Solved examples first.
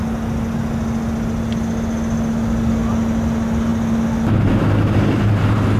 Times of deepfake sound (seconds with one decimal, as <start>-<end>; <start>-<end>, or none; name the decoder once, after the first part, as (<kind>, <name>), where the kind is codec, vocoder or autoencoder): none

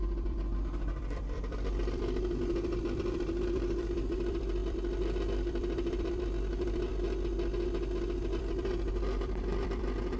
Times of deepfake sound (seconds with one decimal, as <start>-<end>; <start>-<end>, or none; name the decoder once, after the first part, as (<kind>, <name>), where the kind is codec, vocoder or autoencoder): 0.0-6.9 (vocoder, BigVGAN v2); 8.4-10.2

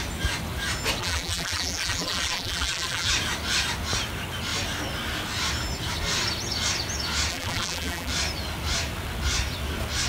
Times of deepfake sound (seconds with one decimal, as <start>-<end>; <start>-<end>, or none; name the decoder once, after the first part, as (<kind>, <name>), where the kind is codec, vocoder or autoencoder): 1.0-3.1 (vocoder, BigVGAN v2); 7.3-8.1